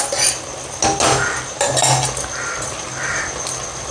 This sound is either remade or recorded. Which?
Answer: recorded